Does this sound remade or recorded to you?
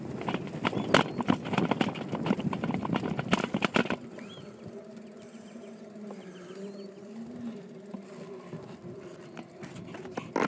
recorded